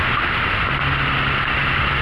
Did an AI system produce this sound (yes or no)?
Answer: no